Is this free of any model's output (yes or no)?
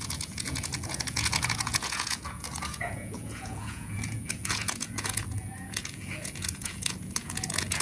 no